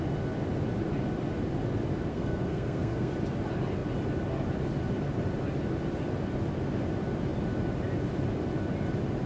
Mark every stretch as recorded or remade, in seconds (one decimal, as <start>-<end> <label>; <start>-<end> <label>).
0.0-2.1 recorded; 2.1-3.1 remade; 3.1-9.3 recorded